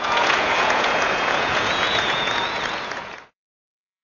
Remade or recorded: remade